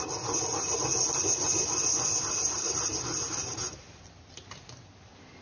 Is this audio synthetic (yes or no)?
no